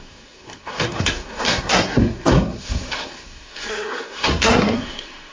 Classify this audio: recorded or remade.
remade